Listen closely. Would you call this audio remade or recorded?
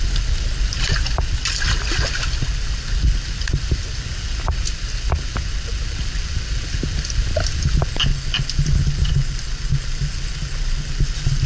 recorded